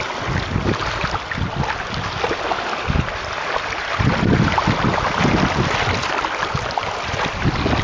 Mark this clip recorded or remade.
recorded